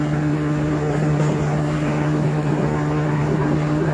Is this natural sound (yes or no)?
no